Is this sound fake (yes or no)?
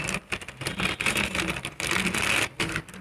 no